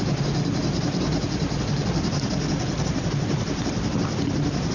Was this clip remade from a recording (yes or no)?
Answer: no